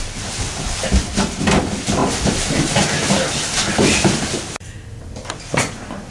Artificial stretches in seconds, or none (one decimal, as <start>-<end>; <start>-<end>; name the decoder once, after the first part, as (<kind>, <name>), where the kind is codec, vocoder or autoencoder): none